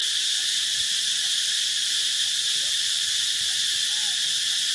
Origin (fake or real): fake